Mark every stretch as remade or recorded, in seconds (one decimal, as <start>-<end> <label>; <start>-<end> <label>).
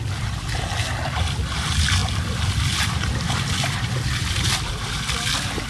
0.0-5.7 recorded